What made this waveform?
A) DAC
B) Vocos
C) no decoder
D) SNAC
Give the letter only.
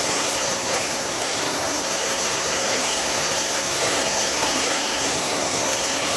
D